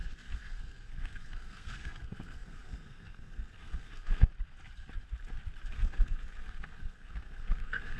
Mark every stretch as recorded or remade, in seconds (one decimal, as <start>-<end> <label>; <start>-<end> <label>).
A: 0.0-4.3 remade; 4.3-5.7 recorded; 5.7-8.0 remade

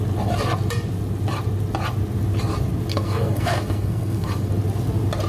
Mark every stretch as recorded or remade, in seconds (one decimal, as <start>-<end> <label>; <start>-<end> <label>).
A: 0.0-2.9 recorded; 2.9-4.5 remade; 4.5-5.3 recorded

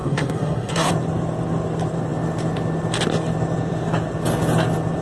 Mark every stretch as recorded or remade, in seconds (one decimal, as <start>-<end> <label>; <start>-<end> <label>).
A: 0.0-0.9 remade; 0.9-5.0 recorded

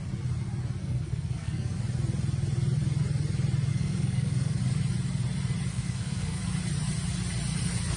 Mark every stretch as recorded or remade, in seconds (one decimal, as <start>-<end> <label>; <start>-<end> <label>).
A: 0.0-0.8 recorded; 0.8-1.8 remade; 1.8-3.7 recorded; 3.7-4.6 remade; 4.6-5.7 recorded; 5.7-6.4 remade; 6.4-8.0 recorded

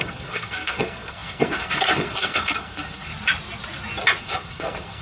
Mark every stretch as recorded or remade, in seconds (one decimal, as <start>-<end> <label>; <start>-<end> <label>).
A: 0.0-3.1 remade; 3.1-4.2 recorded; 4.2-5.0 remade

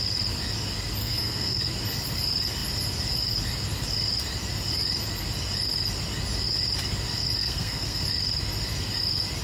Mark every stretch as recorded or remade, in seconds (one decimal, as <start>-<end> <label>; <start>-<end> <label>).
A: 0.0-1.0 recorded; 1.0-1.6 remade; 1.6-7.4 recorded; 7.4-8.0 remade; 8.0-9.4 recorded

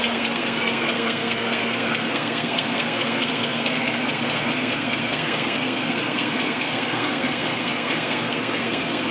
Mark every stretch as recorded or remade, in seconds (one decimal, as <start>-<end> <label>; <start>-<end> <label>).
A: 0.0-9.1 remade